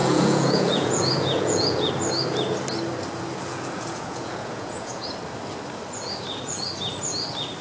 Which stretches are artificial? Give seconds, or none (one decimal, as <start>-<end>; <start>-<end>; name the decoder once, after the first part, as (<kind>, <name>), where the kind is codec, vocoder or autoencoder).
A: 0.0-1.9 (vocoder, Vocos); 3.5-5.1